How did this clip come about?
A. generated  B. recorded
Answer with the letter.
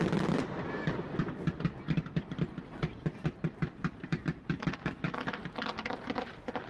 B